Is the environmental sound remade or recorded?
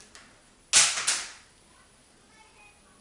recorded